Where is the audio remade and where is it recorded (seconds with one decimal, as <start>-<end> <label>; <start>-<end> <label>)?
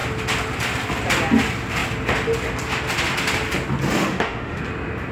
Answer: 0.0-4.0 recorded; 4.0-4.6 remade; 4.6-5.1 recorded